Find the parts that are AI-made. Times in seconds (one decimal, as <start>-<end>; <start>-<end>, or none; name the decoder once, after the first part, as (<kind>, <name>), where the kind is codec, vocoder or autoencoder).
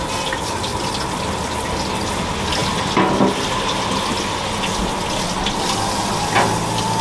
none